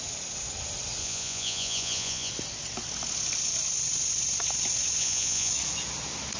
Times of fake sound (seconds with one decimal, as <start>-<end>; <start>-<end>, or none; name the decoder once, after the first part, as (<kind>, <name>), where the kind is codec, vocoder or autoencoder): 1.0-2.3 (vocoder, Vocos); 5.0-5.5